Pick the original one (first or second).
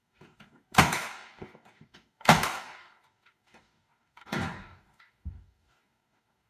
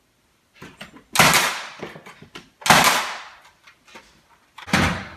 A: second